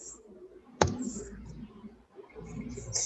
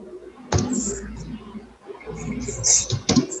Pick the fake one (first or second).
first